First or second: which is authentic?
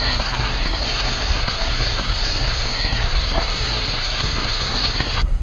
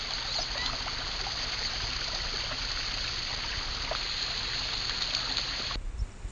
second